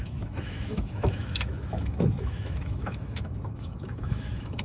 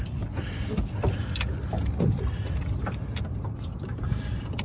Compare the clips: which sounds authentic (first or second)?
second